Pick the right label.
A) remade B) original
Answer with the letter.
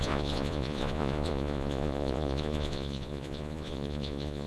A